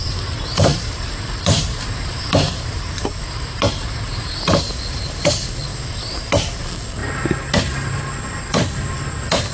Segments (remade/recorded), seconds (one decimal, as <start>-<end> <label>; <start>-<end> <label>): 0.0-0.7 recorded; 0.7-5.3 remade; 5.3-5.7 recorded; 5.7-6.2 remade; 6.2-9.5 recorded

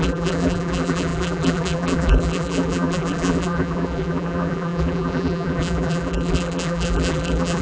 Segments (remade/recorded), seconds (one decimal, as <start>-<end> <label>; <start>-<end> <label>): 0.0-7.6 remade